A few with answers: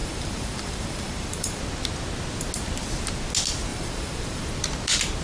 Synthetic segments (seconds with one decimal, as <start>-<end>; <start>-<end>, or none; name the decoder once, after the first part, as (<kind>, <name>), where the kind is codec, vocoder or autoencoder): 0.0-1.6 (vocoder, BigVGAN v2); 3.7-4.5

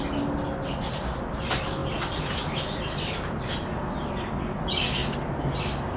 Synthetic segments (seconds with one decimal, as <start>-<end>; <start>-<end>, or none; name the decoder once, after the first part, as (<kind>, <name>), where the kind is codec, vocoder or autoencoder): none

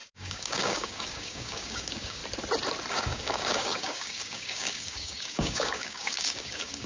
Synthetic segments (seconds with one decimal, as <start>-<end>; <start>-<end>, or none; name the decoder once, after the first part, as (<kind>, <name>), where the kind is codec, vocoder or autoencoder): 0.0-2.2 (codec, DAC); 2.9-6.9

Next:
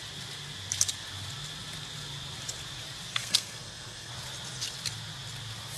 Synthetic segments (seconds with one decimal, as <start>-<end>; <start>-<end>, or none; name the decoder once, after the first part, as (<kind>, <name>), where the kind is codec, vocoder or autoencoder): 3.1-4.1 (codec, SNAC)

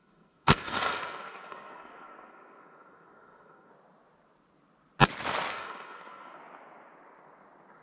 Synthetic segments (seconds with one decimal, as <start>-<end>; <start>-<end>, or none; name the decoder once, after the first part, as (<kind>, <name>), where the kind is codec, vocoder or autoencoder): 0.0-3.7 (codec, SNAC); 5.5-6.4